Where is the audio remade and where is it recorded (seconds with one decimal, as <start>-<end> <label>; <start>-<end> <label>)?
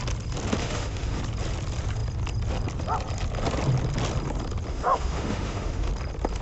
0.0-0.6 recorded; 0.6-1.2 remade; 1.2-4.7 recorded; 4.7-5.9 remade; 5.9-6.4 recorded